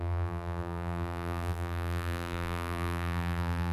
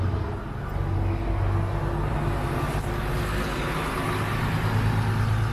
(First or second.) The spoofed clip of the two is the first